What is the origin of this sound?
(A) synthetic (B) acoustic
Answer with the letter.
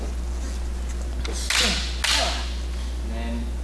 B